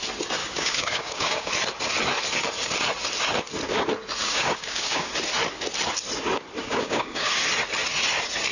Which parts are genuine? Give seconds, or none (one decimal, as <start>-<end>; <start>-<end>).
0.0-0.4; 1.5-4.2; 5.1-6.6; 7.3-8.5